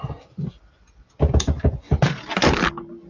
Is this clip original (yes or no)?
yes